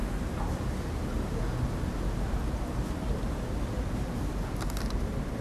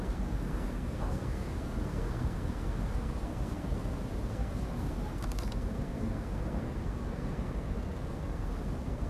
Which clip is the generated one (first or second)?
second